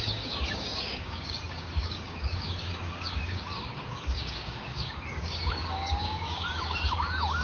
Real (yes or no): no